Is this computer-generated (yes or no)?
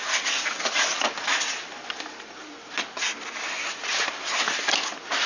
no